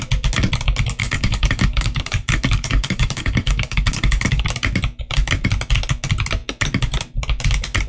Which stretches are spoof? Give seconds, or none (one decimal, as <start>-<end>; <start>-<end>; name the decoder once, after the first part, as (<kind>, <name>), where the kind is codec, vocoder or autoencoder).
1.0-4.4 (codec, DAC)